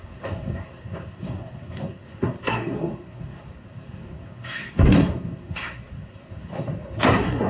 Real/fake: fake